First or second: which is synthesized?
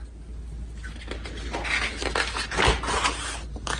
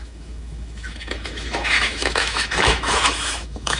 second